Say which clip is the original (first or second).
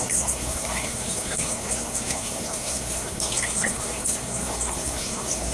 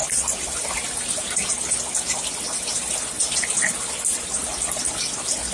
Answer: second